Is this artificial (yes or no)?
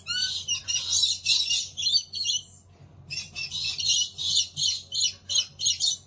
no